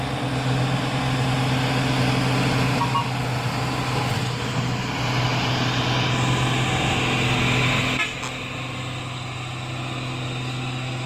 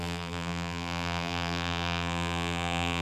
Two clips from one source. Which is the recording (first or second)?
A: first